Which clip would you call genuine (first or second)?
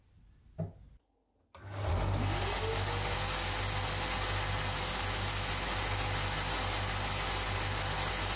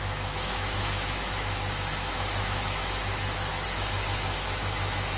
first